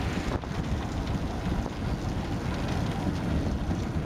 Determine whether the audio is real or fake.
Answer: real